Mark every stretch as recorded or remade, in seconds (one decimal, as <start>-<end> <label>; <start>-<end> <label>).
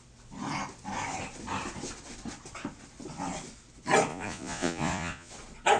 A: 0.0-4.1 recorded; 4.1-5.3 remade; 5.3-5.8 recorded